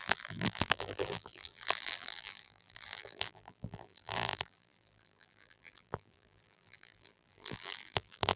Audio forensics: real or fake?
fake